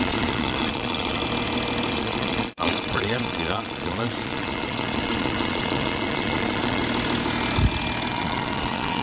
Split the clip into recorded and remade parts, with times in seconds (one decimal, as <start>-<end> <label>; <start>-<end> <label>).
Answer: 0.0-1.2 remade; 1.2-1.9 recorded; 1.9-6.8 remade; 6.8-8.1 recorded; 8.1-9.0 remade